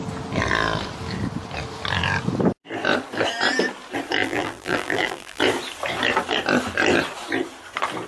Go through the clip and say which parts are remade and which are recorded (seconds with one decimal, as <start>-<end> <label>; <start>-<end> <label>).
0.0-4.2 recorded; 4.2-5.4 remade; 5.4-8.1 recorded